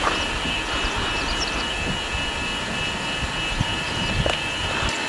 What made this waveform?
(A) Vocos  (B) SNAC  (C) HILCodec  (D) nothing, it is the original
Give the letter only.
D